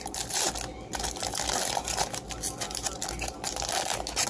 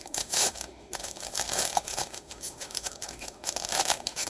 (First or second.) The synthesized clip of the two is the second